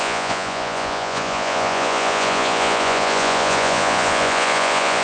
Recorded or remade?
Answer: remade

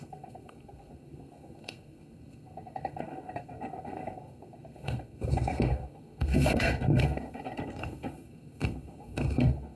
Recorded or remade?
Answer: remade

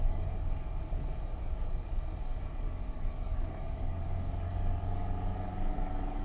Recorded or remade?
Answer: remade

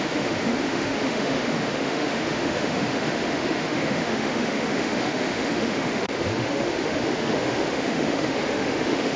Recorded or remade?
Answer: remade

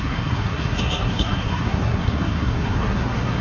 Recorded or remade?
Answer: remade